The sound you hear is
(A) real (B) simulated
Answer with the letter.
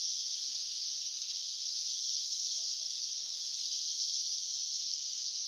B